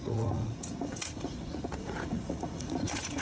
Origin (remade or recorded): remade